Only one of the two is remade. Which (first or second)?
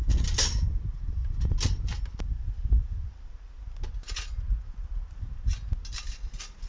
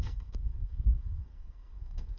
second